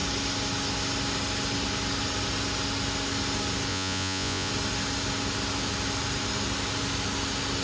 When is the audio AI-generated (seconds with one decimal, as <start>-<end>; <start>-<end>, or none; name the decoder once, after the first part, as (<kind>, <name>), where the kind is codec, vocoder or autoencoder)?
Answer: 3.7-4.5 (vocoder, Vocos)